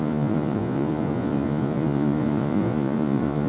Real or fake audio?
fake